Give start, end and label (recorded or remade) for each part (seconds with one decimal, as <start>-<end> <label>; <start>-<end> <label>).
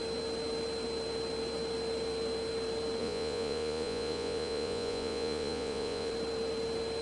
0.0-3.0 recorded; 3.0-6.1 remade; 6.1-7.0 recorded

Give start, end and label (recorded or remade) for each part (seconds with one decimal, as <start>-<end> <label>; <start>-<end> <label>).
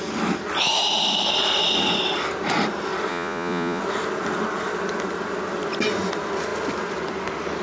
0.0-3.1 recorded; 3.1-3.8 remade; 3.8-7.6 recorded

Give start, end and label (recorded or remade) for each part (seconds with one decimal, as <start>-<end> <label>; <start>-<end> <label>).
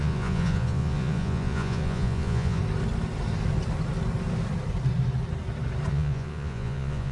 0.0-2.6 remade; 2.6-5.9 recorded; 5.9-7.1 remade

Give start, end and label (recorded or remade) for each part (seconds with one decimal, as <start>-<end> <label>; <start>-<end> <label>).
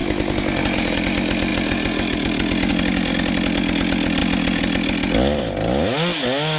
0.0-6.6 recorded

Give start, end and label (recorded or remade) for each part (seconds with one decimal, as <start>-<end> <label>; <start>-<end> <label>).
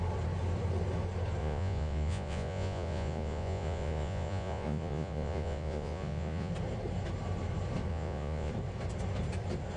0.0-1.4 recorded; 1.4-6.5 remade; 6.5-7.9 recorded; 7.9-8.5 remade; 8.5-9.8 recorded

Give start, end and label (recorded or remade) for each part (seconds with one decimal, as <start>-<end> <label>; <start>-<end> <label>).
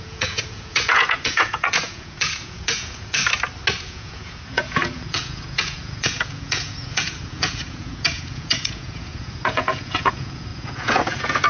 0.0-3.2 remade; 3.2-3.8 recorded; 3.8-11.5 remade